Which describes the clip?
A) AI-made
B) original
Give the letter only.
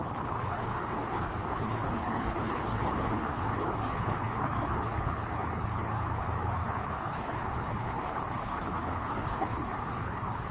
A